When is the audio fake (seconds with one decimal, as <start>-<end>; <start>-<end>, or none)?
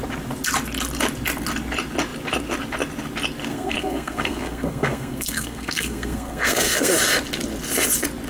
3.5-6.9